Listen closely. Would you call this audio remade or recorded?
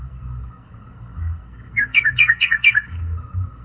remade